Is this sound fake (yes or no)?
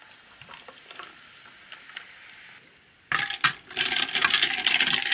no